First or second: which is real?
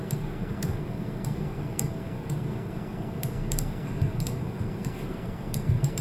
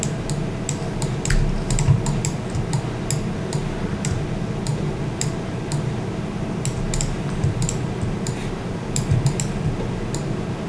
second